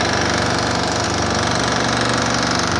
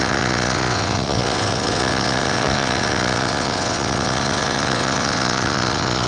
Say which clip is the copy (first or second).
second